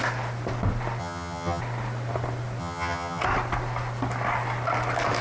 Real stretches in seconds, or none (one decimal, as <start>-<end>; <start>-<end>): 0.0-1.0; 1.6-2.6; 3.2-5.2